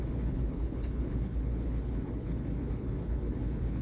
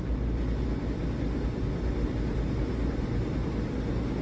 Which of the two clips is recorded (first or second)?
second